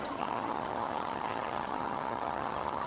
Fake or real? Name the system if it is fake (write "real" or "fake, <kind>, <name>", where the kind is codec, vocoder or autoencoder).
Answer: fake, vocoder, HiFi-GAN